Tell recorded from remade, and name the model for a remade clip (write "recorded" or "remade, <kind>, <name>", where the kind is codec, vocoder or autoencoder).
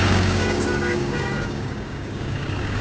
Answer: remade, codec, DAC